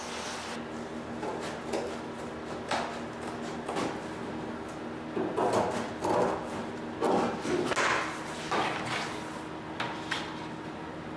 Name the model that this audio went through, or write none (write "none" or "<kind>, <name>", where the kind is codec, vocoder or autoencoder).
none